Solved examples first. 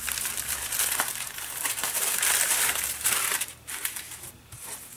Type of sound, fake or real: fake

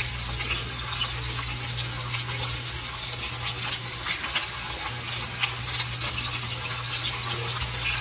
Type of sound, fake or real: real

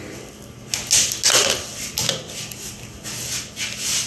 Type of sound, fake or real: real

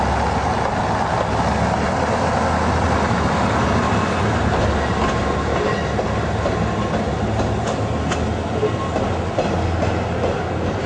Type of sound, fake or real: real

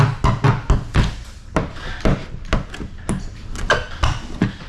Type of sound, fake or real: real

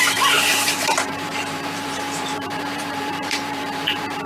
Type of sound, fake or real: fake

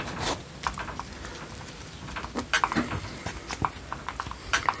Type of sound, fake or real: real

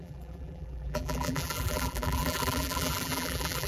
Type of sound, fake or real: fake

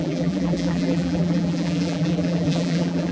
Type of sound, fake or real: fake